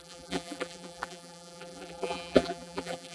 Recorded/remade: remade